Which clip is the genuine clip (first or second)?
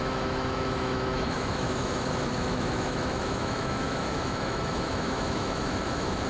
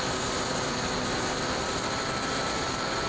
second